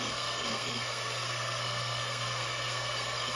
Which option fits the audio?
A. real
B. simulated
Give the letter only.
B